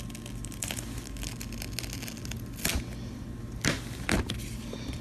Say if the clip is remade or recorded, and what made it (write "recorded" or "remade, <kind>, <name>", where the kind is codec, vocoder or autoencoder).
recorded